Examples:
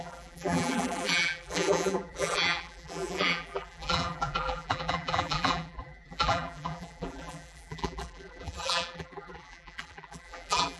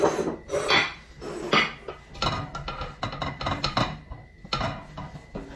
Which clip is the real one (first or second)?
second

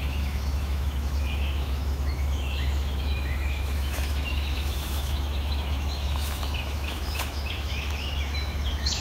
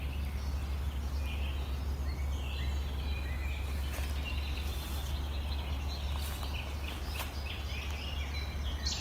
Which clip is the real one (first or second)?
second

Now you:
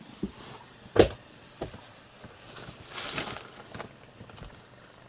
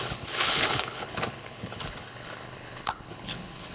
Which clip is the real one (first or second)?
first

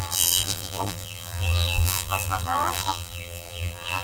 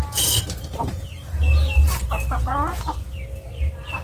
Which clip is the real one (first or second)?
second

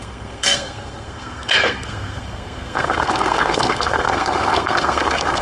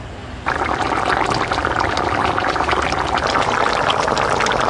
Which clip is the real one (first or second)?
second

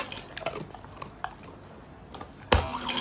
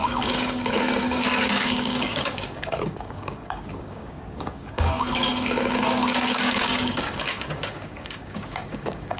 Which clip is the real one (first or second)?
first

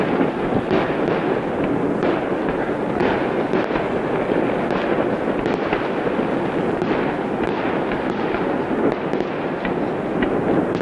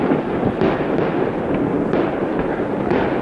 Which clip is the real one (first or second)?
first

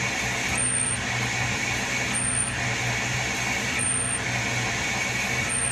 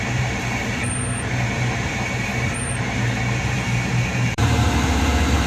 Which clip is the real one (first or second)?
first